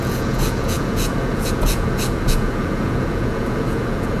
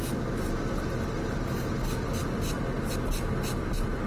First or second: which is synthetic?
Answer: first